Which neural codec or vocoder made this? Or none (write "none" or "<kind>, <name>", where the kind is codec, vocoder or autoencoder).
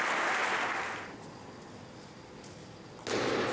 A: none